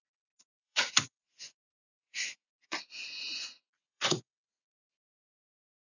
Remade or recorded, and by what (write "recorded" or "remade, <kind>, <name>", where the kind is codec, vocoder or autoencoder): remade, vocoder, Vocos